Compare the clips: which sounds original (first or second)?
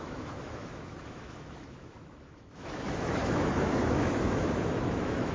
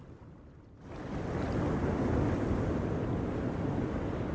second